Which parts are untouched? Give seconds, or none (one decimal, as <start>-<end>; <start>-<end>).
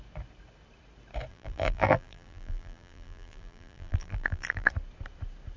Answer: 0.0-1.3; 4.7-5.6